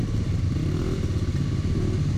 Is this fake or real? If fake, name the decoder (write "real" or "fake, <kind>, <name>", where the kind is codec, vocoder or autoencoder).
real